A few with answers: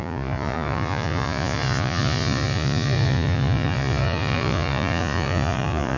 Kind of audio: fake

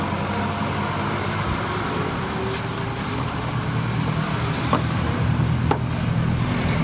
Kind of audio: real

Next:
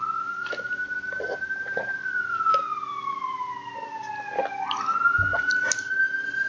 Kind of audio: real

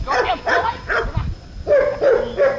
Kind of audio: real